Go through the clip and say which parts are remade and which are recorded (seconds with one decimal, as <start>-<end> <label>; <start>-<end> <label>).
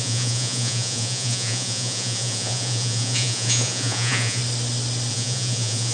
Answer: 0.0-4.4 remade; 4.4-5.1 recorded; 5.1-5.9 remade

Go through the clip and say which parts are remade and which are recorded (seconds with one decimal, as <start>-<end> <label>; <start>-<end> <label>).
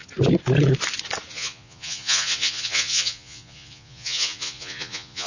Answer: 0.0-1.3 recorded; 1.3-5.3 remade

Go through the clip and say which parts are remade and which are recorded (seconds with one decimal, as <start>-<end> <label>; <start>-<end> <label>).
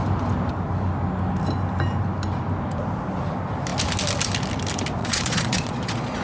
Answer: 0.0-5.0 recorded; 5.0-6.2 remade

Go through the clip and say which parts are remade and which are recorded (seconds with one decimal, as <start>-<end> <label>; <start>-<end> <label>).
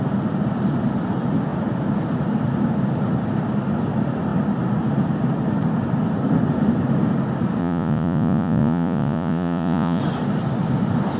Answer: 0.0-7.6 recorded; 7.6-10.0 remade; 10.0-11.2 recorded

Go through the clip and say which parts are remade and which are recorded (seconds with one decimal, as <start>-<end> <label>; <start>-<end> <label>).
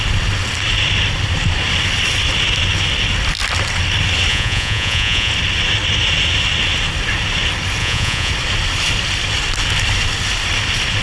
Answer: 0.0-4.3 recorded; 4.3-5.3 remade; 5.3-7.8 recorded; 7.8-8.3 remade; 8.3-11.0 recorded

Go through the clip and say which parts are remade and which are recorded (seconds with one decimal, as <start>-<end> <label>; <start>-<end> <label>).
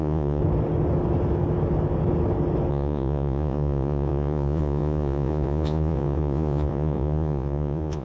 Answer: 0.0-0.4 remade; 0.4-2.7 recorded; 2.7-8.0 remade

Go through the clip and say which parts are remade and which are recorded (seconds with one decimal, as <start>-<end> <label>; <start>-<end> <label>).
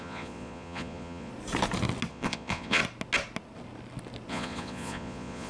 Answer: 0.0-1.3 remade; 1.3-2.1 recorded; 2.1-2.8 remade; 2.8-4.3 recorded; 4.3-5.5 remade